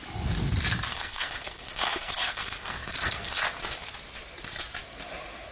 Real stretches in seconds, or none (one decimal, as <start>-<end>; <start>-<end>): 0.0-0.9; 3.3-5.5